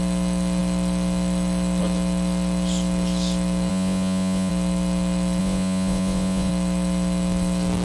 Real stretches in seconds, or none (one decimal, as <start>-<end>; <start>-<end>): 0.0-3.7; 4.5-5.4; 6.5-7.8

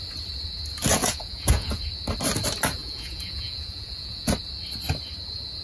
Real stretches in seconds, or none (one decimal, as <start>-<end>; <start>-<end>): 0.0-1.0; 1.8-2.8; 4.3-5.6

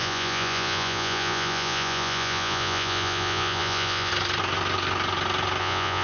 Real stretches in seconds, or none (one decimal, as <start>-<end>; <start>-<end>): 4.1-5.6

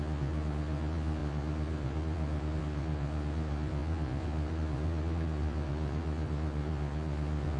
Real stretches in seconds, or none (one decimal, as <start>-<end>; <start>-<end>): none

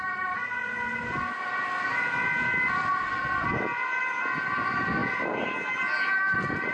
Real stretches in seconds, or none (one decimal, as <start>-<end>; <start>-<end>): 0.0-6.7

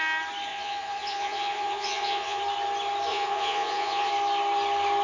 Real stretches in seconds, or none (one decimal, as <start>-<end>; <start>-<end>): 0.0-0.5; 2.4-3.1; 4.1-5.0

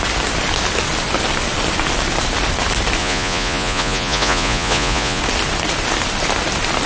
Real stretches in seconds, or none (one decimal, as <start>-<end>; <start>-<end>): 0.0-3.0; 5.2-6.9

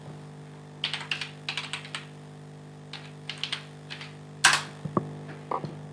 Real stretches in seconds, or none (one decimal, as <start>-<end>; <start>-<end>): 0.0-5.9